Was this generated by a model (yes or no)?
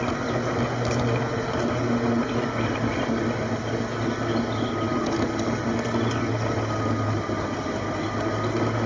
no